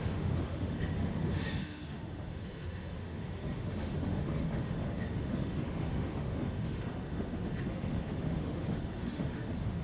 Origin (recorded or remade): remade